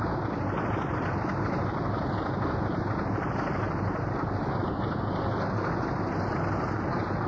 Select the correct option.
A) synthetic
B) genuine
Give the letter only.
B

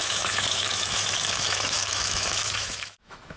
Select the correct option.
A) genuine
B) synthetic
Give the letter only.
B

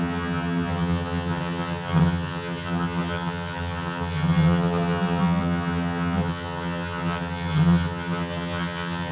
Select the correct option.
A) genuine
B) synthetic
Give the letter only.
B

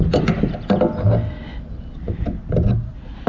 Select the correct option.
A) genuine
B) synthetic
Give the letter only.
A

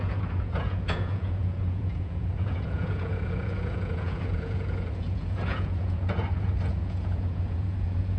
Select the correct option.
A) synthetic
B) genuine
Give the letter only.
A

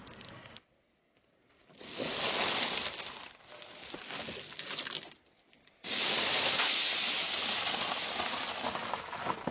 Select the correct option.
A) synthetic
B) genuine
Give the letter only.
B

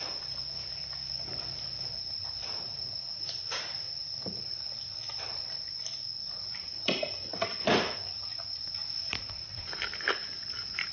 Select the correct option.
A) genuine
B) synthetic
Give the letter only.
B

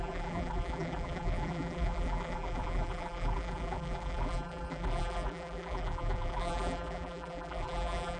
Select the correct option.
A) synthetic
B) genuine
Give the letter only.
A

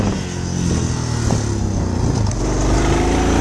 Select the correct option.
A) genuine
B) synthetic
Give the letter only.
A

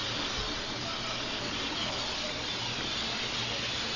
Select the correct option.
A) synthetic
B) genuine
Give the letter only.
B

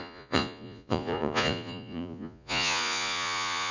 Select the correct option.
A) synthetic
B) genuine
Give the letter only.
A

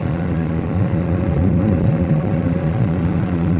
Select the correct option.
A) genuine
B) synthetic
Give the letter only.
B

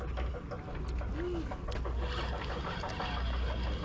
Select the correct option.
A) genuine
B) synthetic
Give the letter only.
A